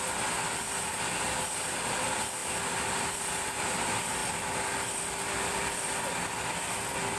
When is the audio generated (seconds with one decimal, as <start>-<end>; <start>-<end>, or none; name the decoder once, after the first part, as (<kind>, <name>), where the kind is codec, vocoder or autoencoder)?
none